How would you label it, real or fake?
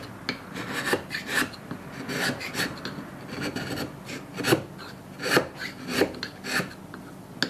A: real